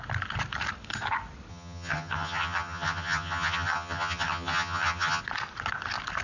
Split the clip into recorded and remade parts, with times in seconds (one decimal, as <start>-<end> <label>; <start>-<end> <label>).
0.0-1.5 recorded; 1.5-5.2 remade; 5.2-6.2 recorded